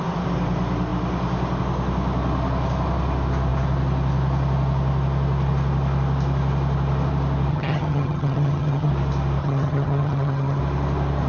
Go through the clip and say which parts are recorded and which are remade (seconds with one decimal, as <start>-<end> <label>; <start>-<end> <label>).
0.0-7.5 recorded; 7.5-8.9 remade; 8.9-9.4 recorded; 9.4-10.6 remade; 10.6-11.3 recorded